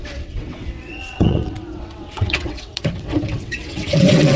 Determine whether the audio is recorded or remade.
remade